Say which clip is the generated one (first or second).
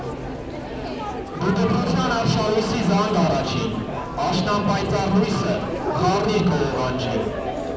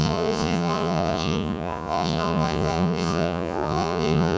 second